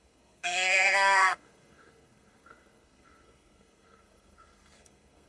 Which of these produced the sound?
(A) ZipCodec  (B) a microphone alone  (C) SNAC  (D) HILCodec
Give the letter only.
C